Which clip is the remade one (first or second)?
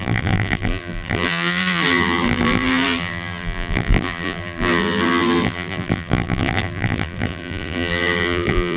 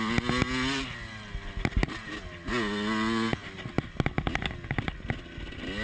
first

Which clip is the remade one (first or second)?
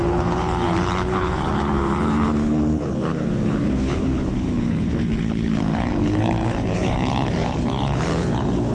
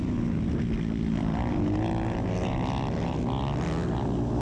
first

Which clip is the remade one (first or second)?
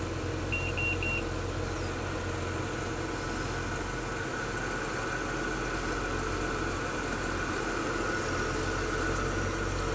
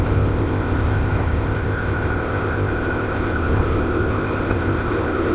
second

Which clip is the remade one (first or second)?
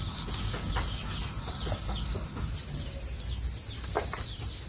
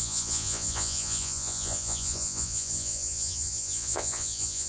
second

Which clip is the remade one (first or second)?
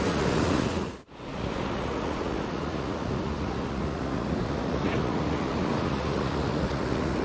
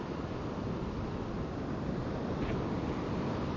first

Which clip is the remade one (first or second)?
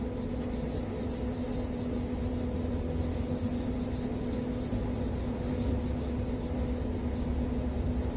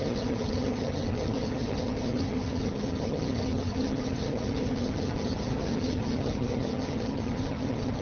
second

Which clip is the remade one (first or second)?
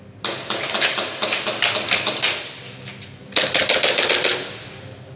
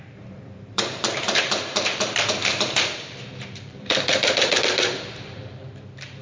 second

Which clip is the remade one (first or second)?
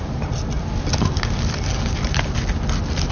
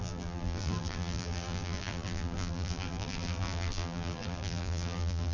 second